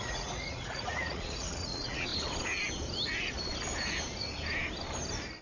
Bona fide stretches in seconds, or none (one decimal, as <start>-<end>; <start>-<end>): 2.1-5.4